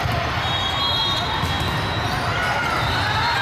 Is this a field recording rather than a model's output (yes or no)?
yes